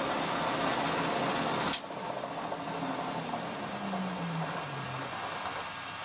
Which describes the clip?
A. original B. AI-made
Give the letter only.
A